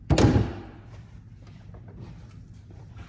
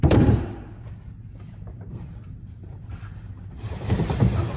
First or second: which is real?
first